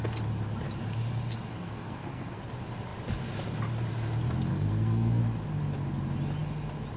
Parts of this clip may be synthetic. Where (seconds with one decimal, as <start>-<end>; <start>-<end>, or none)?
1.5-2.4; 4.5-5.2